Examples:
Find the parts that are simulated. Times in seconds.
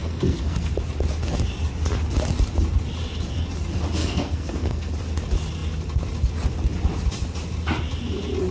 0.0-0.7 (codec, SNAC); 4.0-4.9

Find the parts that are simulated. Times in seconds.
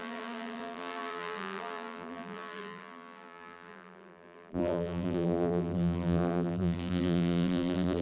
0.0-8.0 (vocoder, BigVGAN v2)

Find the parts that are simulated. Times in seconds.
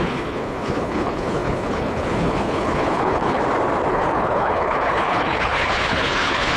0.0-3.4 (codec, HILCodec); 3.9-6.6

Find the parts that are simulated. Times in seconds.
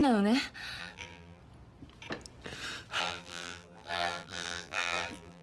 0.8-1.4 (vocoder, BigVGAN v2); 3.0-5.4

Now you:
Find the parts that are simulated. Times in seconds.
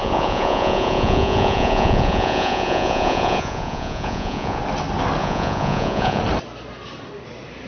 0.0-4.6 (vocoder, Vocos); 5.2-6.2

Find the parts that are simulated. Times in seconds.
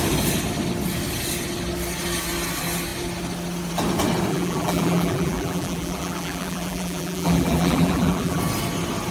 4.3-8.4 (vocoder, BigVGAN v2)